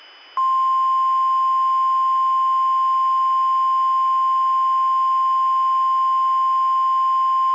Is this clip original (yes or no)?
yes